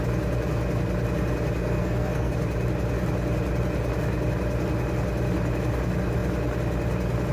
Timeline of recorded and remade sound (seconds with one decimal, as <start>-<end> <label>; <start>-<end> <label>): 0.0-1.6 recorded; 1.6-2.3 remade; 2.3-7.3 recorded